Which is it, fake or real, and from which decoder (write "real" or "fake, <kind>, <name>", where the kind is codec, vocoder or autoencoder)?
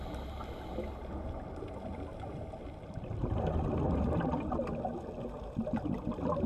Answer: real